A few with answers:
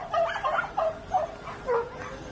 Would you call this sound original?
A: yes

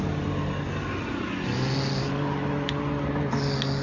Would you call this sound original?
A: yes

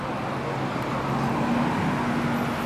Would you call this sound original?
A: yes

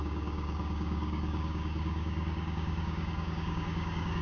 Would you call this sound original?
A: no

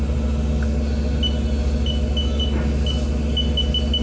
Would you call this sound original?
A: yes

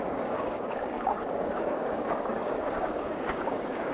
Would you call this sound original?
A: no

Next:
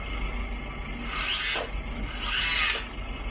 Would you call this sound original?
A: yes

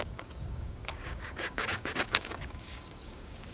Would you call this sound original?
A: no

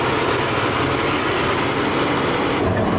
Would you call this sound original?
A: yes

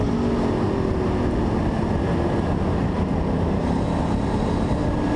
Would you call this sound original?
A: yes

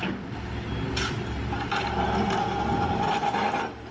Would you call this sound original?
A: yes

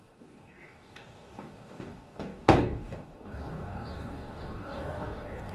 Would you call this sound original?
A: no